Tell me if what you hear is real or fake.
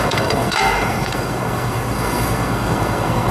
fake